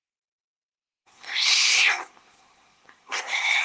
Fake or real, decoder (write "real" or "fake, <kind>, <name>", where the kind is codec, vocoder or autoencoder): fake, codec, SNAC